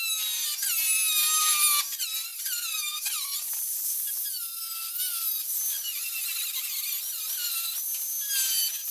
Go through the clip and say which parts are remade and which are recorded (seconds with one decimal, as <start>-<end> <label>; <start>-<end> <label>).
0.0-2.3 recorded; 2.3-4.6 remade; 4.6-8.9 recorded